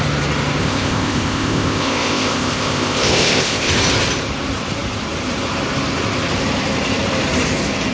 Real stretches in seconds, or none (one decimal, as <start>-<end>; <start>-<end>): 0.0-0.6; 3.7-7.9